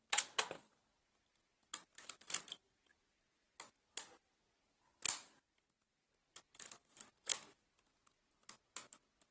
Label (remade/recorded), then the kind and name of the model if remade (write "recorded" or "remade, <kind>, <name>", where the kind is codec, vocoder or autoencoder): recorded